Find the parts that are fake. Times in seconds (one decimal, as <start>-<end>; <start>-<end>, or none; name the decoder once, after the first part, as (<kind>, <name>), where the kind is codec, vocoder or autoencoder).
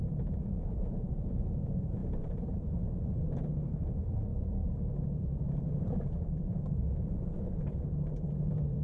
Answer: 0.0-8.8 (vocoder, BigVGAN v2)